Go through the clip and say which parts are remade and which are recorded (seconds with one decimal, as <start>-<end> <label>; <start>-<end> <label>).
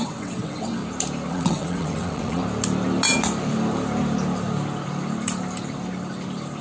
0.0-0.8 remade; 0.8-1.3 recorded; 1.3-2.4 remade; 2.4-6.6 recorded